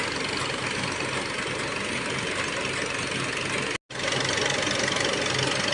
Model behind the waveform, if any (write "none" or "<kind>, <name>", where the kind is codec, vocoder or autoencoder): none